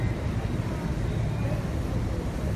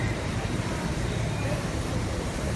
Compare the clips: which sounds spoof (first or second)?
second